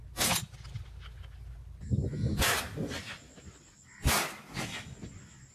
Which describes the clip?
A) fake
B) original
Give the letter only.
B